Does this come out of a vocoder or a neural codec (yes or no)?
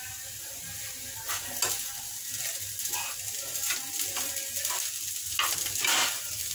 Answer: no